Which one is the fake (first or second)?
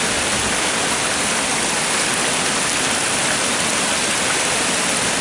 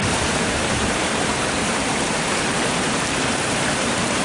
second